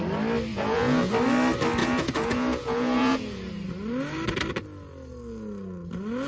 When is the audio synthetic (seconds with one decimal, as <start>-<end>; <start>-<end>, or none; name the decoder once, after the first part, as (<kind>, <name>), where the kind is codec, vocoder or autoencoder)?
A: 0.5-1.1 (vocoder, Vocos); 1.8-3.5